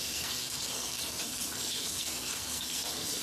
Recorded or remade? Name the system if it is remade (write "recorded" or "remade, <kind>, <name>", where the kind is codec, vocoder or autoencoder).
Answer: remade, codec, SNAC